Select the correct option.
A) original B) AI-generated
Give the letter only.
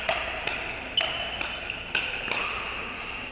A